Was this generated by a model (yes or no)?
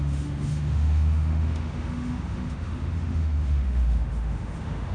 yes